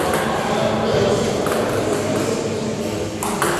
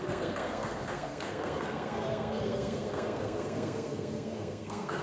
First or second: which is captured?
first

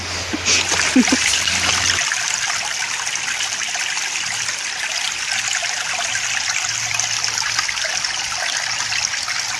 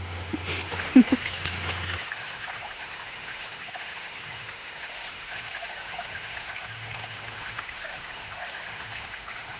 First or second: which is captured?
first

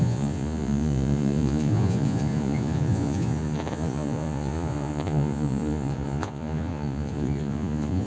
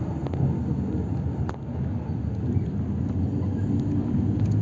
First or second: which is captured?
second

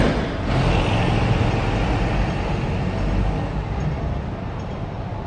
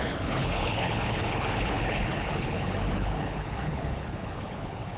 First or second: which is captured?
first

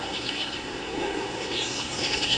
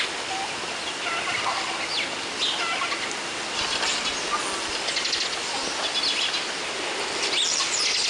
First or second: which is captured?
second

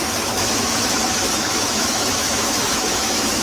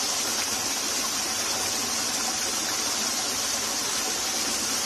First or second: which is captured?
second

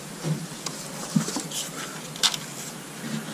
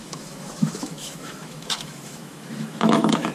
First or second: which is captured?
first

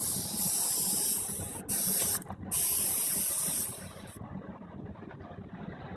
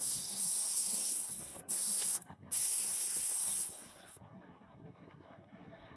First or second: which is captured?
first